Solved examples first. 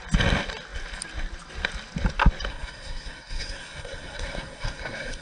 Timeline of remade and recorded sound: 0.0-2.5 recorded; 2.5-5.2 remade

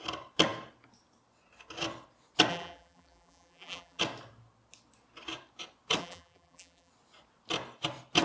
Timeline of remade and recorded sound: 0.0-2.5 recorded; 2.5-4.0 remade; 4.0-6.0 recorded; 6.0-6.9 remade; 6.9-8.2 recorded

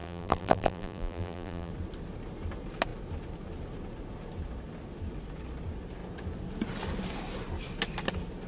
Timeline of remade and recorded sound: 0.0-1.7 remade; 1.7-8.5 recorded

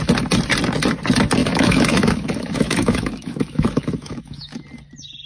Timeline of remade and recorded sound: 0.0-1.4 recorded; 1.4-4.6 remade; 4.6-5.3 recorded

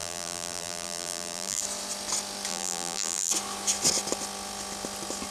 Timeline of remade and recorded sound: 0.0-1.6 remade; 1.6-2.5 recorded; 2.5-3.3 remade; 3.3-5.3 recorded